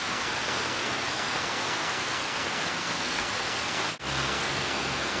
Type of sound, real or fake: fake